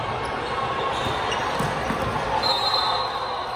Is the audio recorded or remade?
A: recorded